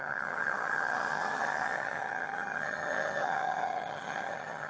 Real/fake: fake